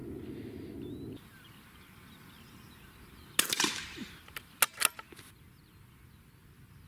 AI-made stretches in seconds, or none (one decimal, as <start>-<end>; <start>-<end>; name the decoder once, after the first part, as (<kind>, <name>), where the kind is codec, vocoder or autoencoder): none